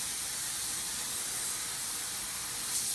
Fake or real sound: fake